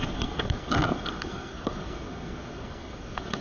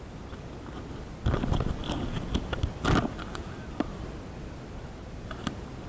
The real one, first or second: second